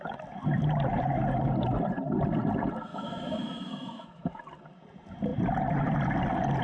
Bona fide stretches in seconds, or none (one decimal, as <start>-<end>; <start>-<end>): 0.0-2.9; 4.4-6.6